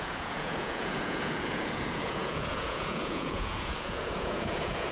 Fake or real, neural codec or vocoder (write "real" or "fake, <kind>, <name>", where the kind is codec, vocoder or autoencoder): fake, vocoder, Vocos